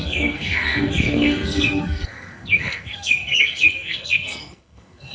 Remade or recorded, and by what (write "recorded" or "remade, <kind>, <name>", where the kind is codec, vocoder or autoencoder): remade, codec, SNAC